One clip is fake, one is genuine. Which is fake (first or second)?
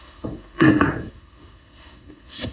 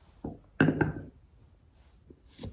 first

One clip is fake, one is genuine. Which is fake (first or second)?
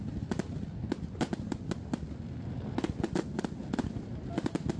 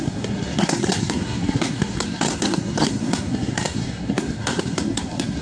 second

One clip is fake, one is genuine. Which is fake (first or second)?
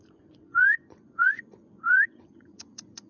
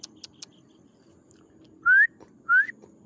first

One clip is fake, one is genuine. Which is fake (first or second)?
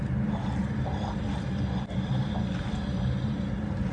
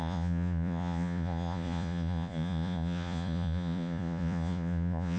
second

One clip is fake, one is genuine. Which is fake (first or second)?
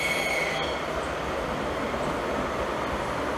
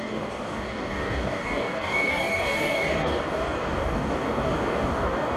second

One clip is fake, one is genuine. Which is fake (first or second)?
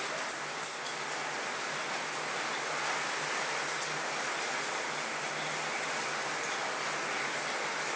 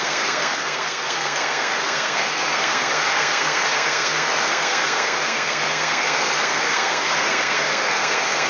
second